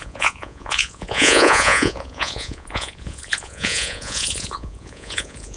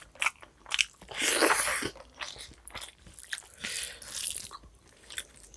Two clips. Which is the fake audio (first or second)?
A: first